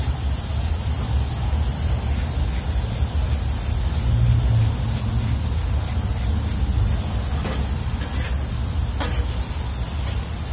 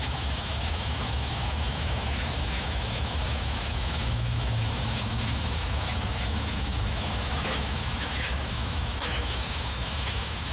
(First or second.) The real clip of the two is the first